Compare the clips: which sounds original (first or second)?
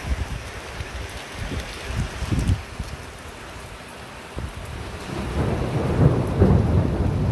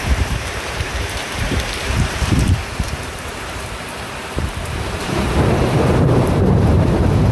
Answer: first